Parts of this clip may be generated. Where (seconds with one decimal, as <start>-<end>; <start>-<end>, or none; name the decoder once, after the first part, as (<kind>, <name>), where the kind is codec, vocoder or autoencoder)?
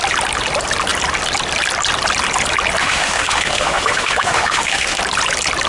2.8-5.0 (autoencoder, DAC-VAE)